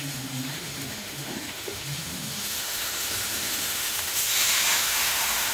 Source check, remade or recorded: remade